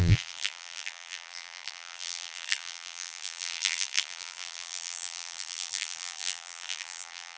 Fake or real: fake